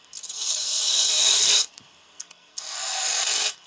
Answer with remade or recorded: remade